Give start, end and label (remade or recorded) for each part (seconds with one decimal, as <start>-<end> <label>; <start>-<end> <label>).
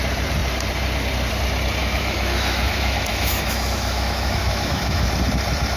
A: 0.0-1.8 recorded; 1.8-5.1 remade; 5.1-5.8 recorded